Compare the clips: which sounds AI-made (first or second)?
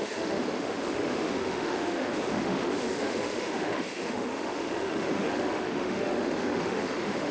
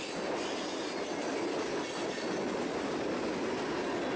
first